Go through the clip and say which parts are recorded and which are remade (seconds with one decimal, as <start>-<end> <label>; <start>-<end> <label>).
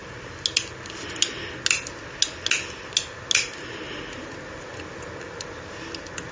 0.0-6.3 recorded